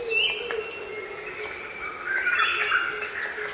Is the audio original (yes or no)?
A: yes